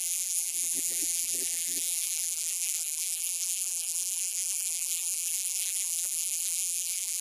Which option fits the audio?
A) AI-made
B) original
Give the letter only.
A